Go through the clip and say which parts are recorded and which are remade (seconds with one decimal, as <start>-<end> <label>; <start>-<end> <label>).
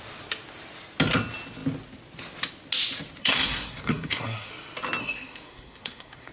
0.0-3.2 recorded; 3.2-4.5 remade; 4.5-5.0 recorded; 5.0-6.3 remade